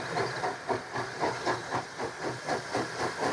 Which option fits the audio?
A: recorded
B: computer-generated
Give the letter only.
A